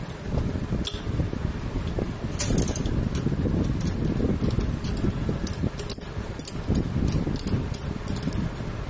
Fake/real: real